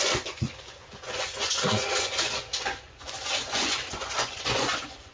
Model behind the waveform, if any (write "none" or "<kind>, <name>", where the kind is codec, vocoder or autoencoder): vocoder, Vocos